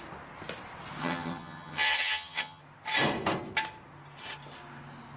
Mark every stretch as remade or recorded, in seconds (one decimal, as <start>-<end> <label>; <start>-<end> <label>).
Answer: 0.0-1.0 recorded; 1.0-2.6 remade; 2.6-5.2 recorded